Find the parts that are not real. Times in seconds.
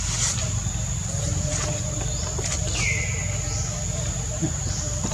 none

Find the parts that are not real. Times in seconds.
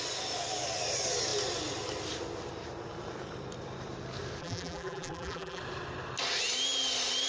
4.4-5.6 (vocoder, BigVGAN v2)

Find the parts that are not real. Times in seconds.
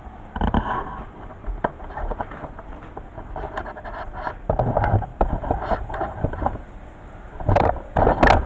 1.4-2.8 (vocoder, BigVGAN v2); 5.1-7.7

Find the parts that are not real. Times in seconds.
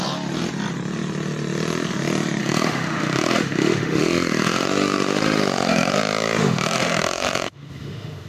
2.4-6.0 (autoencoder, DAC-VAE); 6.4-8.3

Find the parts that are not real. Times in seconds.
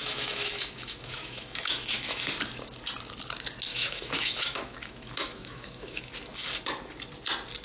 0.0-2.3 (autoencoder, DAC-VAE); 3.7-6.1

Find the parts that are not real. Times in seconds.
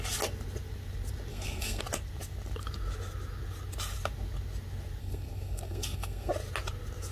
1.3-1.8 (codec, SNAC); 5.0-6.3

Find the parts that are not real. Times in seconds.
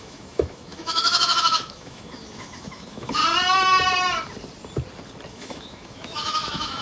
0.0-3.2 (autoencoder, DAC-VAE); 5.3-6.8